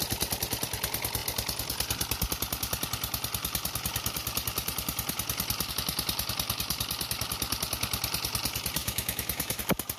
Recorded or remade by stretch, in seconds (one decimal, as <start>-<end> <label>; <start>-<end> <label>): 0.0-8.8 recorded; 8.8-9.6 remade; 9.6-10.0 recorded